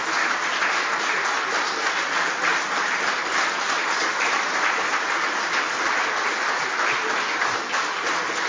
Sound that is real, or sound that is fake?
real